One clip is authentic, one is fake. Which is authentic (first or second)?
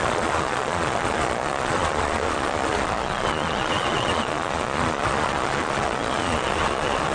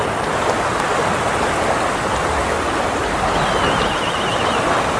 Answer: second